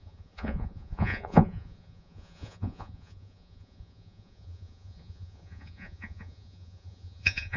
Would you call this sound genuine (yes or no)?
no